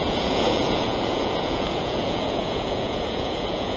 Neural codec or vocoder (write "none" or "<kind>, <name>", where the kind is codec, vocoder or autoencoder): vocoder, Vocos